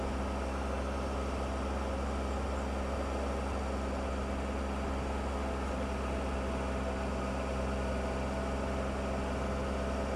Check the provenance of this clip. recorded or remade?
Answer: recorded